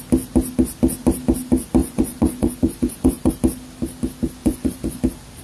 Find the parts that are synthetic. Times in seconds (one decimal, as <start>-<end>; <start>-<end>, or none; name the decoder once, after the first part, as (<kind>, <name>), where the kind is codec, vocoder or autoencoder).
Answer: 1.8-3.3 (vocoder, Vocos); 4.4-5.0